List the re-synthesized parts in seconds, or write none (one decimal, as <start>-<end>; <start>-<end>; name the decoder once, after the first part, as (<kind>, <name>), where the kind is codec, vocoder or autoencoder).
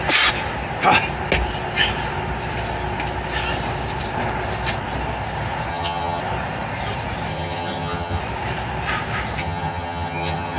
5.7-6.2 (vocoder, HiFi-GAN); 7.3-8.2; 9.4-10.6